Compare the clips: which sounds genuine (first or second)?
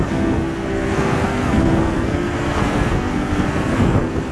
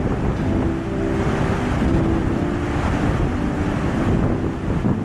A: second